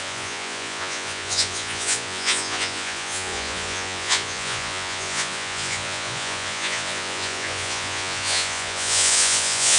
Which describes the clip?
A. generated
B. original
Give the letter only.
A